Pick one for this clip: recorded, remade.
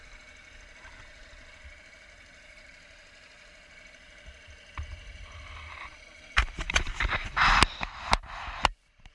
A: recorded